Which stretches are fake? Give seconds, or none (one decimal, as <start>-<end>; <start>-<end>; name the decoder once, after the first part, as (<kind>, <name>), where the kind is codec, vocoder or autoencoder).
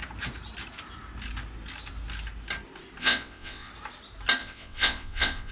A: 3.0-3.7 (vocoder, WaveNeXt); 4.4-5.5